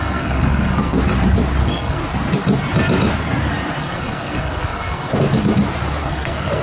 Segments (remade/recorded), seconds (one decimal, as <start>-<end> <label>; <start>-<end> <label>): 0.0-1.0 remade; 1.0-1.6 recorded; 1.6-2.0 remade; 2.0-3.8 recorded; 3.8-5.1 remade; 5.1-6.0 recorded; 6.0-6.6 remade